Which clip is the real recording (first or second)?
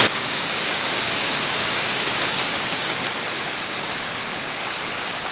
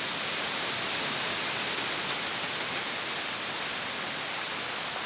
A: second